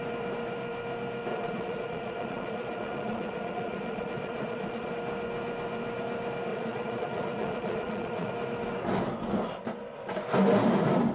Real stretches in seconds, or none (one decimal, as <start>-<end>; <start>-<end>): 0.0-1.3; 4.9-6.5; 8.3-11.1